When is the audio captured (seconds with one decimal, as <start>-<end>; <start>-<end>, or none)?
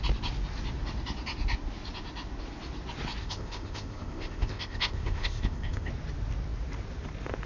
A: 0.0-3.2; 5.9-7.5